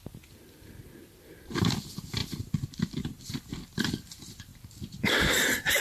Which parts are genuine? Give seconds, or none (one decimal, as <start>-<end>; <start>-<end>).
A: 4.5-5.8